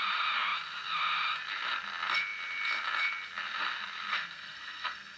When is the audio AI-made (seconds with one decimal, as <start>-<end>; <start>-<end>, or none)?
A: 4.1-5.2

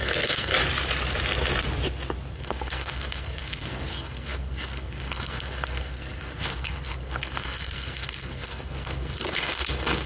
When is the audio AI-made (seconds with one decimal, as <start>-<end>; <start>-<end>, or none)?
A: 0.0-0.5; 2.3-10.1